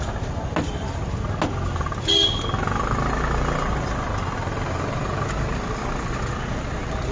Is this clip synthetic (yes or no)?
no